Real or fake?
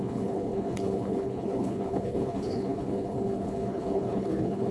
fake